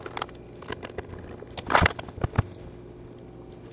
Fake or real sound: real